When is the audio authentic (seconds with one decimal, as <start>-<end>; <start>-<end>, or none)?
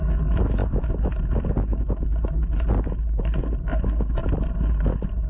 0.0-5.3